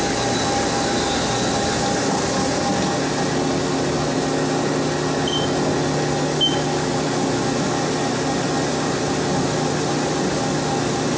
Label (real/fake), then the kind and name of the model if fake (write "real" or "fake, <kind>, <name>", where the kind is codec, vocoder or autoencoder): real